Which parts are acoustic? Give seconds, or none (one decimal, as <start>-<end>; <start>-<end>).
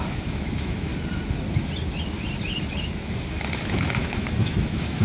0.9-3.6